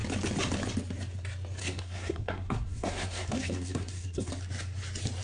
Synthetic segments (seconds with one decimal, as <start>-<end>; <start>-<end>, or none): 1.6-4.3